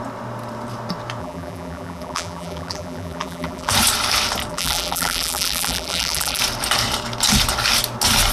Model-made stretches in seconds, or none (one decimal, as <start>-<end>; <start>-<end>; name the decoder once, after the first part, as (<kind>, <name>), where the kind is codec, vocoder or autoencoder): 1.2-3.7 (vocoder, BigVGAN v2); 4.5-6.4